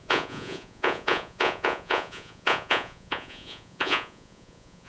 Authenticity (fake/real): fake